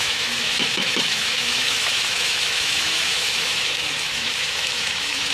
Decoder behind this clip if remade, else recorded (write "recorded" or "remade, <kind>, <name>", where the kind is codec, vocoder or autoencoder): remade, autoencoder, DAC-VAE